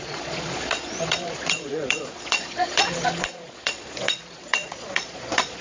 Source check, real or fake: fake